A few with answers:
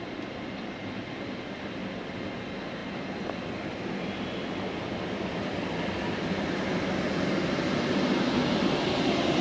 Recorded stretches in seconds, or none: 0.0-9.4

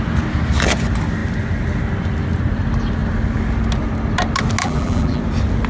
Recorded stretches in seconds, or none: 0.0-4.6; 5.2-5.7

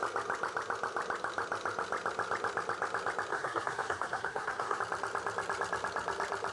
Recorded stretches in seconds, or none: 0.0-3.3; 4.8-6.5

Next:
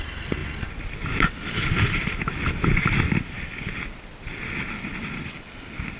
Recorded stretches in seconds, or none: 0.0-0.4; 4.0-6.0